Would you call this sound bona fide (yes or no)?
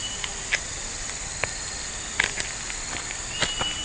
yes